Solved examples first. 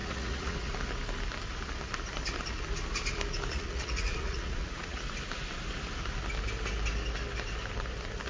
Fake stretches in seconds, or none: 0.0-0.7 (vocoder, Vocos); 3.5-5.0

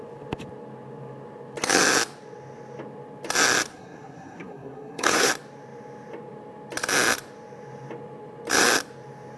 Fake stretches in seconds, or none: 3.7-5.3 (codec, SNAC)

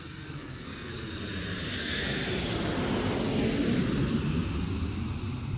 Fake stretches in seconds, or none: 0.0-0.9 (codec, SNAC); 1.8-2.2

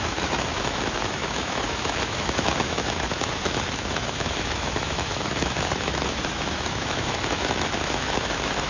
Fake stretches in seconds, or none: 0.0-8.7 (autoencoder, DAC-VAE)